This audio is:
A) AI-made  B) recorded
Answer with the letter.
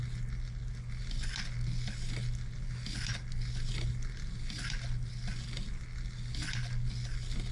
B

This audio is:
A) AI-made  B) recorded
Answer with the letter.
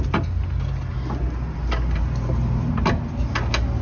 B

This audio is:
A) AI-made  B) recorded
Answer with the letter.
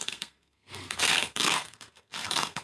A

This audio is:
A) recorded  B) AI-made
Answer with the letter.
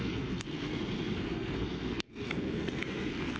B